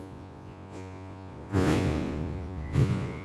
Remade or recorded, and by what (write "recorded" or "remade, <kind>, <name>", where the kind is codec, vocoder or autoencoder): remade, vocoder, Vocos